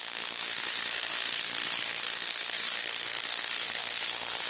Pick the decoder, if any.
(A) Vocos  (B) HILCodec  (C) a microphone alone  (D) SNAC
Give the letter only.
D